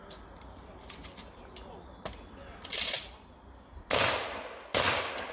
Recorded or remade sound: recorded